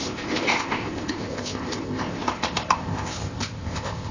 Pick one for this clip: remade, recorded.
remade